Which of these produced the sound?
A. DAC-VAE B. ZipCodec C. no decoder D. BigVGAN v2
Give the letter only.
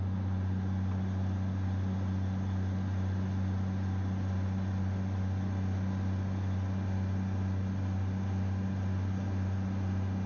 C